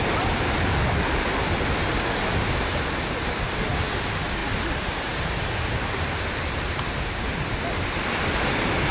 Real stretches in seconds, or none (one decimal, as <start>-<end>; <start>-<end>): 0.0-8.9